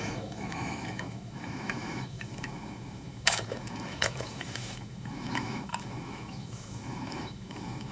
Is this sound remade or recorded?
remade